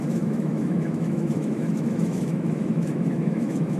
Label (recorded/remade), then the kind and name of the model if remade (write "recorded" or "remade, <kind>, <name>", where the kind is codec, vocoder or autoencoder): remade, autoencoder, DAC-VAE